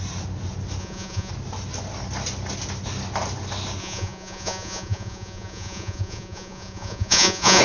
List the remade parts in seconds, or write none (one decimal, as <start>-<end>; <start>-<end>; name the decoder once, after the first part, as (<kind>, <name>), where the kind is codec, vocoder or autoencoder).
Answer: 0.8-1.3 (vocoder, Vocos); 3.8-7.6